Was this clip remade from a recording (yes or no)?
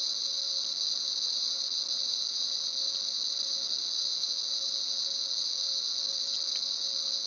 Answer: no